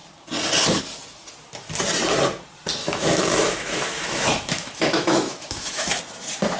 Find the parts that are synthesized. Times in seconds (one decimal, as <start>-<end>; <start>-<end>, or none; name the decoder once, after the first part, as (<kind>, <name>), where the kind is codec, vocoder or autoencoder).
2.8-6.0 (autoencoder, DAC-VAE)